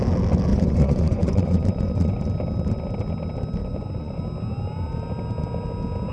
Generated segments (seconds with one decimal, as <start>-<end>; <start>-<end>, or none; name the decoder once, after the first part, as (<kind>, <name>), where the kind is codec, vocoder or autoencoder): 0.5-2.2 (vocoder, Vocos); 3.6-4.2